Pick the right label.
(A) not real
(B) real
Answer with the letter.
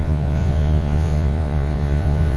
A